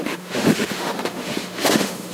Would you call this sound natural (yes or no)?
no